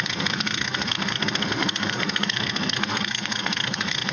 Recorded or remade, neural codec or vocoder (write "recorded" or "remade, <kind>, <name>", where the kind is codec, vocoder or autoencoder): remade, codec, SNAC